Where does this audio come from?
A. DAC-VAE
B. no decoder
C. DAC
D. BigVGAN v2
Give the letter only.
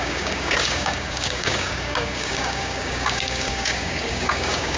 C